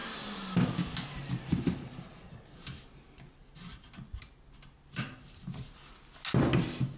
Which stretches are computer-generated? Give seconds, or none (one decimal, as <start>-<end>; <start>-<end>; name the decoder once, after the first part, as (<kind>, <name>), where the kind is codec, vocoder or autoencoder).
none